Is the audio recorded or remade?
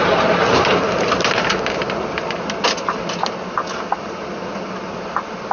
recorded